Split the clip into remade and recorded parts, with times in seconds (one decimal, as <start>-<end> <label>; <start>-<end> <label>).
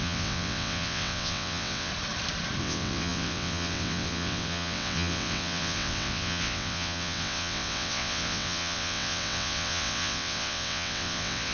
0.0-1.9 remade; 1.9-2.6 recorded; 2.6-11.5 remade